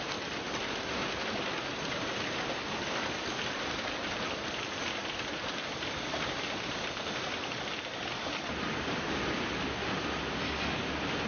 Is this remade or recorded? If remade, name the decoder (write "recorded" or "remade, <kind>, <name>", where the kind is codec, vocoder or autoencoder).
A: recorded